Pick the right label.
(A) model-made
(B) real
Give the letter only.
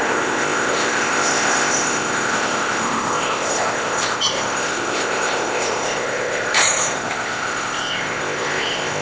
A